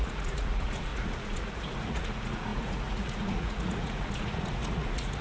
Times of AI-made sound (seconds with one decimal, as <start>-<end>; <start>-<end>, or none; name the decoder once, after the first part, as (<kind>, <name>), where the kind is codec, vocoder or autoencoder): 0.0-5.2 (vocoder, Vocos)